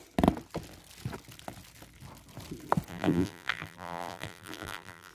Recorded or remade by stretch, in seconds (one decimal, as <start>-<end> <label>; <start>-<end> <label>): 0.0-2.9 recorded; 2.9-5.1 remade